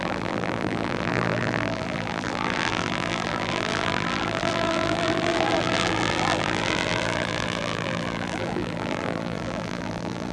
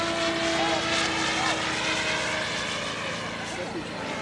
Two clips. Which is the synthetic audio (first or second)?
first